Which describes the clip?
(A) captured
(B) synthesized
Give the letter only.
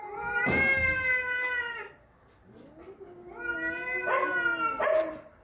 A